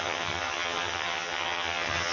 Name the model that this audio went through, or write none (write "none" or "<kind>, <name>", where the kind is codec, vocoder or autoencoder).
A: vocoder, HiFi-GAN